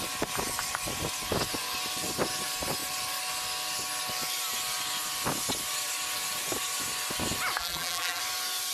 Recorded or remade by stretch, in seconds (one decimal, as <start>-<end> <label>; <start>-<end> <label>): 0.0-7.6 recorded; 7.6-8.2 remade; 8.2-8.7 recorded